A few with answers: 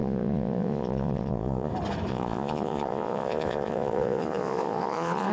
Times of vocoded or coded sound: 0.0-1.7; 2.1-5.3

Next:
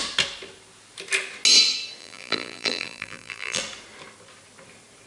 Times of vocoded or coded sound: 2.0-3.6

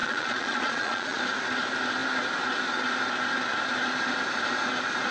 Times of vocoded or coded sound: 0.0-1.2

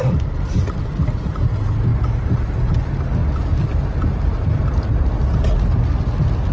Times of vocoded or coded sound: 0.0-3.2

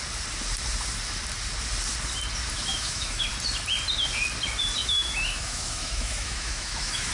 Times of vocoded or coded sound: 2.7-3.3; 4.8-7.1

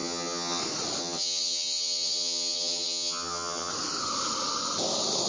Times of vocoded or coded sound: 0.0-0.6; 1.0-3.7

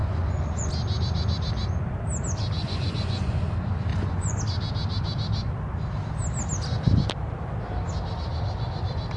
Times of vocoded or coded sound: 0.0-0.7; 2.6-3.4; 3.9-4.4

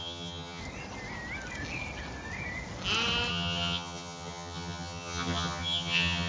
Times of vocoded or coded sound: 0.0-0.6; 3.3-6.3